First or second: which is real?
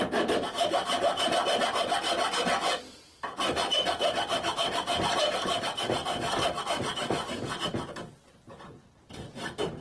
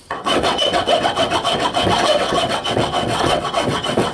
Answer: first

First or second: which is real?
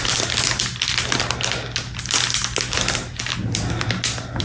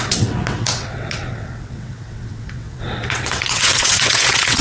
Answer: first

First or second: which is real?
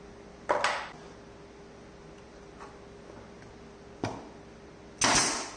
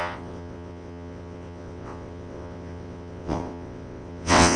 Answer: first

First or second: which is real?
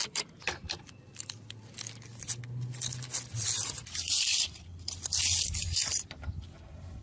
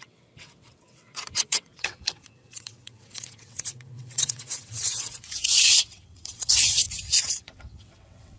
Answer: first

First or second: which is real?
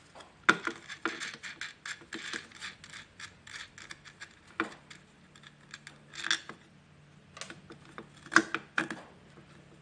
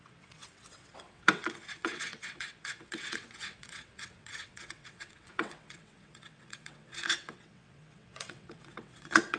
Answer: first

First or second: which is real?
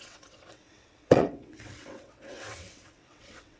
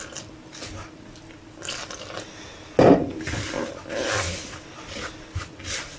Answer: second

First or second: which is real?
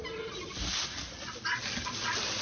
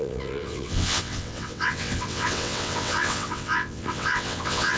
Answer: first